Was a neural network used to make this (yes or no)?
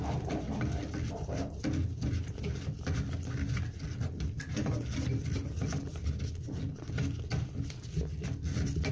no